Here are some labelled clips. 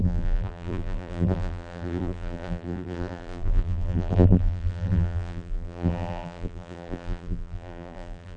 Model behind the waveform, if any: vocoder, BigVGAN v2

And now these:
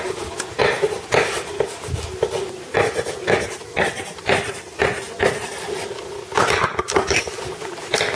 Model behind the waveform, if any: none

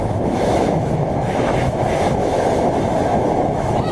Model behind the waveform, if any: autoencoder, DAC-VAE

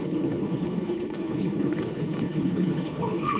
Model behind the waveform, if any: codec, HILCodec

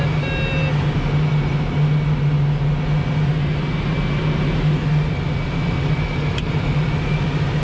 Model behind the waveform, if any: none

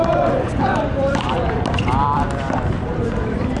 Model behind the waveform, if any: vocoder, BigVGAN v2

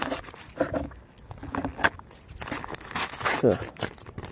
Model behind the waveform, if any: none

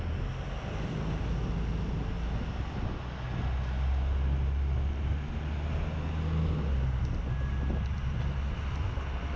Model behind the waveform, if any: none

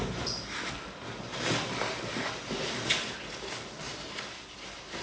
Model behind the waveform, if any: none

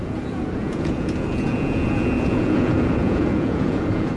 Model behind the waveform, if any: vocoder, Vocos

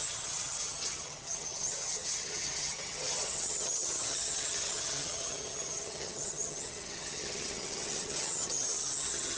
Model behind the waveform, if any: vocoder, HiFi-GAN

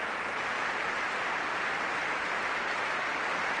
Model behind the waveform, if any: none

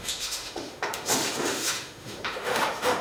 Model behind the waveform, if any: autoencoder, DAC-VAE